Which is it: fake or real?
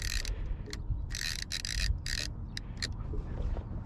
real